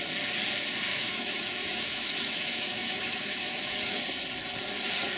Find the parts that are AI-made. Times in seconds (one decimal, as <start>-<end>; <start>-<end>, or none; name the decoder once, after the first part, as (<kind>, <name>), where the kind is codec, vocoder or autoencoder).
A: 0.9-4.0 (autoencoder, DAC-VAE)